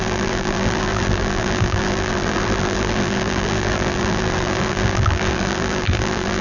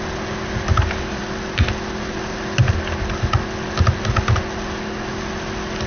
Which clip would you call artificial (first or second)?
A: first